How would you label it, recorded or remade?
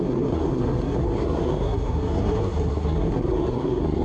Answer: remade